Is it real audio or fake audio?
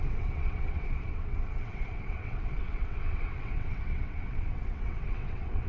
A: fake